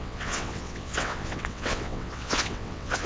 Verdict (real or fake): fake